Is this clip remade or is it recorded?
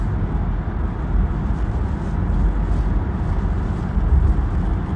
recorded